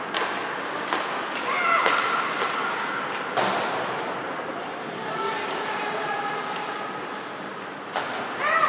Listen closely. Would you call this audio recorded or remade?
recorded